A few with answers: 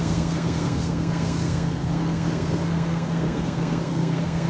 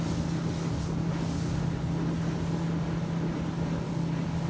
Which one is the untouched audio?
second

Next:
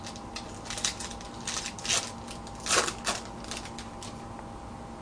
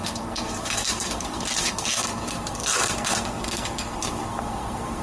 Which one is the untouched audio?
first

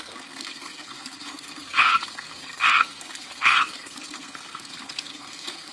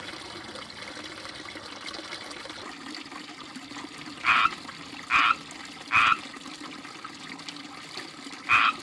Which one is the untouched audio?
second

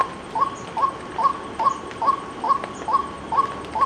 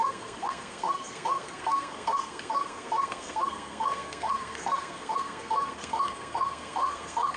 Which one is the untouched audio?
first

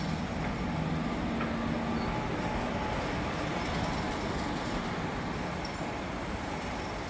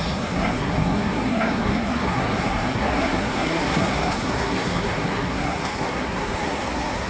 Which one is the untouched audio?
first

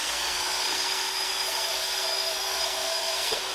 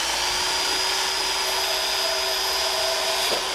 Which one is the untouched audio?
second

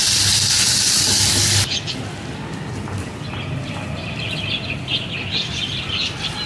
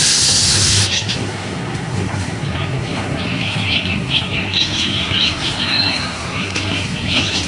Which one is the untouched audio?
first